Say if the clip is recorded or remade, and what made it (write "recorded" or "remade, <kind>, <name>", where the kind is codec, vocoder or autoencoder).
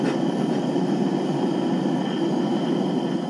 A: recorded